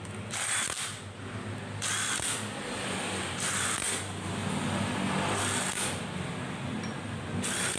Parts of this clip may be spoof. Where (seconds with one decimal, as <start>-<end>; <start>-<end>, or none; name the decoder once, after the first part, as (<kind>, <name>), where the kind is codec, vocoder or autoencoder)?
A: none